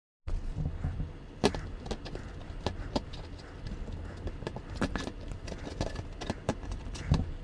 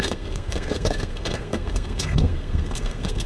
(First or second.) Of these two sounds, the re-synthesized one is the second